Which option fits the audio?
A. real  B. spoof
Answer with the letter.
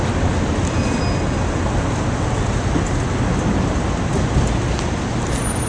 A